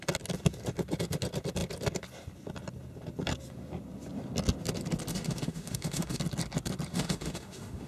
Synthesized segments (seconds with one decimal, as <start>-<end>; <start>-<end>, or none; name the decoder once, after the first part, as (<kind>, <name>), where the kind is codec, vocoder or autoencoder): 5.1-6.2 (autoencoder, DAC-VAE); 6.9-7.9